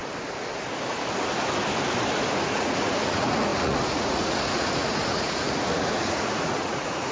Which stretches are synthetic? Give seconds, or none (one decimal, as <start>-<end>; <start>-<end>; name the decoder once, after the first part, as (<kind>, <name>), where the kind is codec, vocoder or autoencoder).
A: 2.5-7.1 (vocoder, Vocos)